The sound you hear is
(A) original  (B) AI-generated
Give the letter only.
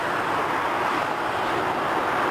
A